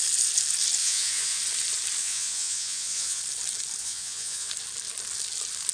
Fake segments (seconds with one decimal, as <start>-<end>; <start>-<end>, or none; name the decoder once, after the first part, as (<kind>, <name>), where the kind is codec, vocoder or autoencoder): 0.8-1.4 (vocoder, Vocos); 2.0-3.2; 3.8-4.5